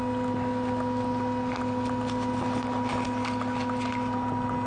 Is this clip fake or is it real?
real